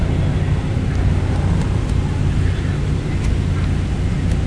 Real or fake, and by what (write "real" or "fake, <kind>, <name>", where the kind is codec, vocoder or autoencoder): real